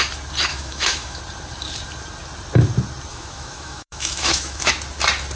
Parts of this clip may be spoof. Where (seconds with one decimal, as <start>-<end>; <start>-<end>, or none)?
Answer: 0.5-1.2; 3.1-4.7